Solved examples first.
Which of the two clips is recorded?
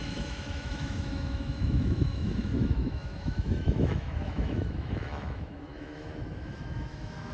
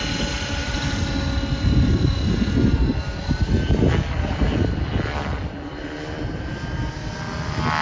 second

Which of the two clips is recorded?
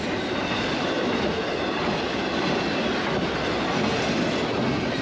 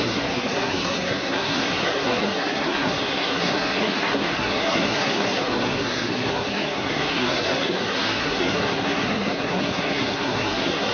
first